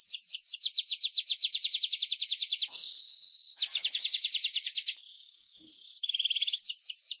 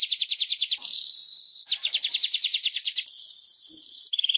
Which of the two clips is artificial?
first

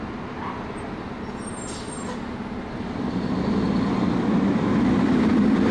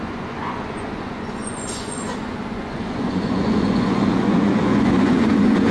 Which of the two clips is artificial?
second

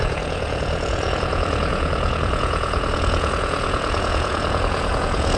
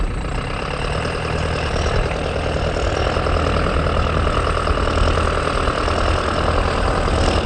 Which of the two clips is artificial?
first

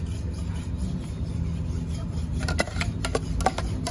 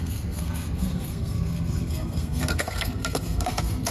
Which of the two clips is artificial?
second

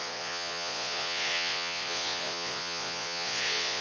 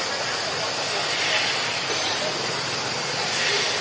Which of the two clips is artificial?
first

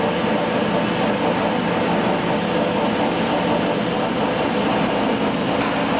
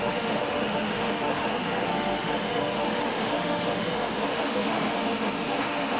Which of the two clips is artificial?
second